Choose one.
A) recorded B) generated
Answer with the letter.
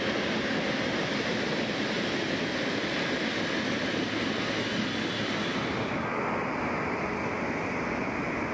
A